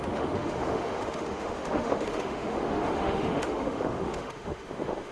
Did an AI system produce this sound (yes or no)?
yes